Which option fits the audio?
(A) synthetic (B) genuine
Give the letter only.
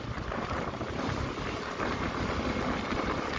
B